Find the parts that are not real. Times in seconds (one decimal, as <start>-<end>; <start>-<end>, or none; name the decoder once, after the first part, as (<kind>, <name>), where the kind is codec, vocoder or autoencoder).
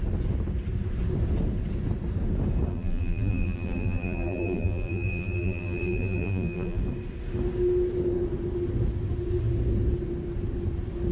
2.7-6.8 (vocoder, BigVGAN v2)